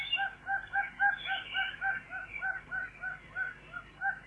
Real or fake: real